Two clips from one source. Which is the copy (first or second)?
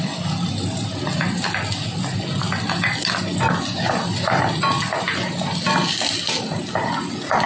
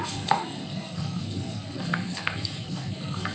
second